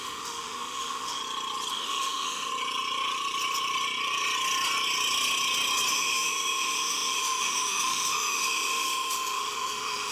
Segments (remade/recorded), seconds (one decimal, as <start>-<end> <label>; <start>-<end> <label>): 0.0-1.2 remade; 1.2-1.7 recorded; 1.7-2.5 remade; 2.5-5.9 recorded; 5.9-10.1 remade